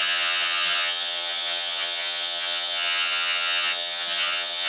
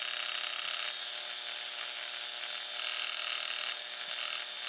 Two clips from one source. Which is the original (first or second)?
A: second